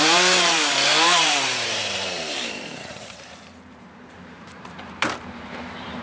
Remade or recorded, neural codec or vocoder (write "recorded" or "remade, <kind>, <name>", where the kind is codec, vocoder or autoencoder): remade, vocoder, BigVGAN v2